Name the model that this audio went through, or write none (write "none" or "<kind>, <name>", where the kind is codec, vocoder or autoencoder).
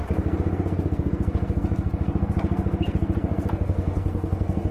codec, SNAC